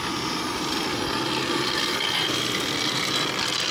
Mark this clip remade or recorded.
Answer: recorded